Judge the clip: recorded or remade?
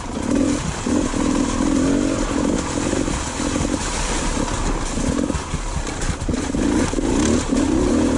recorded